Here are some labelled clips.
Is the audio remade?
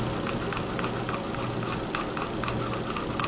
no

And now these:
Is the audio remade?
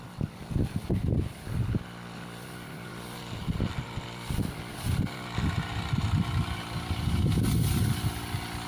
no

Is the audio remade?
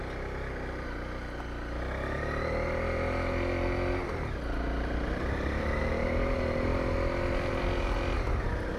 no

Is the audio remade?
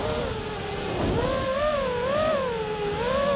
no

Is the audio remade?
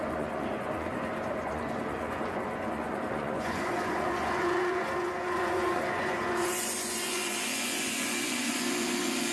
yes